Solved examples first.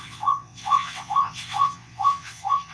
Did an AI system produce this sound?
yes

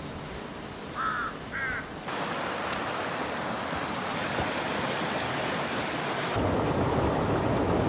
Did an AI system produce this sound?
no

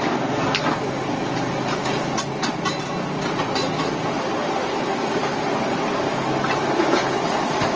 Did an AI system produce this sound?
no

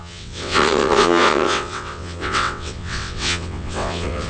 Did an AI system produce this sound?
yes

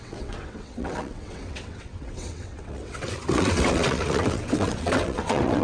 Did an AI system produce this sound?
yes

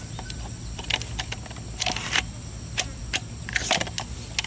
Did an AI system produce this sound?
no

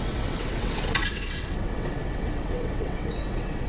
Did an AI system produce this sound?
yes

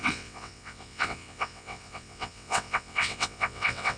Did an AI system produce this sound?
yes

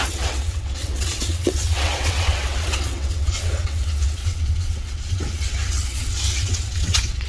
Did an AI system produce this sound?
yes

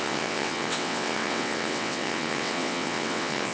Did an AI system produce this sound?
yes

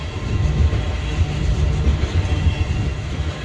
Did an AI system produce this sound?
no